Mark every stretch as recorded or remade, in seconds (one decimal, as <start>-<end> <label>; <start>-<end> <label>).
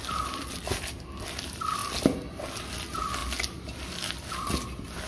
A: 0.0-5.1 recorded